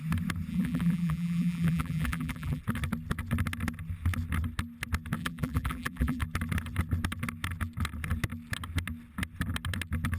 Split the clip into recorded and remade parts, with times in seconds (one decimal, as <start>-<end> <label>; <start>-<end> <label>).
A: 0.0-0.5 recorded; 0.5-2.6 remade; 2.6-5.2 recorded; 5.2-6.2 remade; 6.2-10.2 recorded